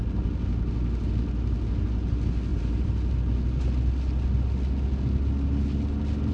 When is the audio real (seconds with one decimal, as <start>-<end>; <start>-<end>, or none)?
0.0-2.5; 3.2-6.3